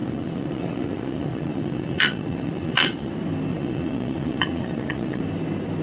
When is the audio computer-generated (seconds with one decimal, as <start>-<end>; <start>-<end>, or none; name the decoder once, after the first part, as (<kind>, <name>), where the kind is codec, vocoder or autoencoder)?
0.0-3.1 (vocoder, Vocos); 3.5-5.2